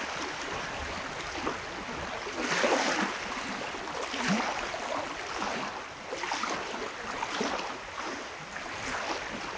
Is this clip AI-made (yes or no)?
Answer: no